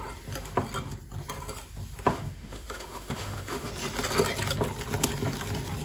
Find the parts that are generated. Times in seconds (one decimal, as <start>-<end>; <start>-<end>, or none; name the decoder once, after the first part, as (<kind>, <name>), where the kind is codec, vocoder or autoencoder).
2.1-3.7 (autoencoder, DAC-VAE)